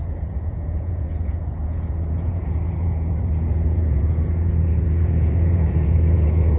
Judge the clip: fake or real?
fake